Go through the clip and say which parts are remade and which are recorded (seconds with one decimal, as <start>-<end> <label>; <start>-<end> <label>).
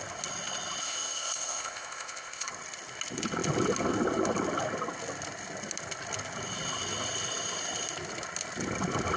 0.0-0.8 recorded; 0.8-2.5 remade; 2.5-9.2 recorded